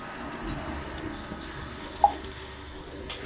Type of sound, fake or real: real